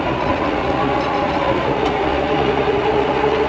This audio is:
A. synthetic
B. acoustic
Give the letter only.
A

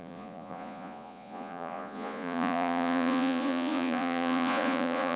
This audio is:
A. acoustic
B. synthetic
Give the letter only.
B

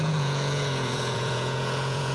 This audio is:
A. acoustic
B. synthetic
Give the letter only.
B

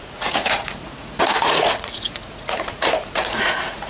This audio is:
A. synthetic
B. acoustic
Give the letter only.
A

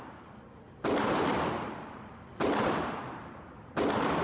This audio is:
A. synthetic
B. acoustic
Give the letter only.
B